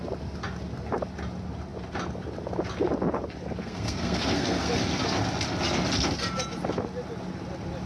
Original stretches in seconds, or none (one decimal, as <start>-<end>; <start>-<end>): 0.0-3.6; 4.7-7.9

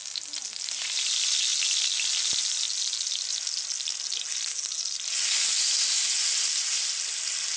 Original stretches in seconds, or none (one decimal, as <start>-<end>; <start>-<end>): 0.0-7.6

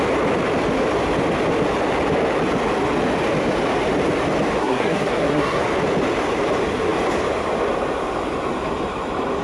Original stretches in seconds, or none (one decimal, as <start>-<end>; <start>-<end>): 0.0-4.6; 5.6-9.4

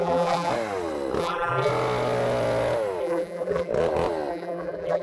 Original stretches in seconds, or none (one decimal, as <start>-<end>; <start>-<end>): 0.5-1.2; 1.7-3.0; 3.7-4.3

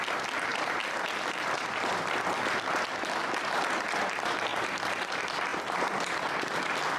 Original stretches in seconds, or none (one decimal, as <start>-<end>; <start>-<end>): 0.0-7.0

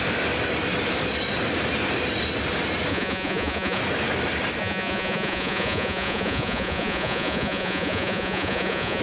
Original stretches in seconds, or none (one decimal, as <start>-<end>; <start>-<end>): 0.0-2.9; 3.8-4.6